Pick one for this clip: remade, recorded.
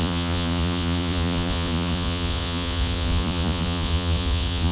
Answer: remade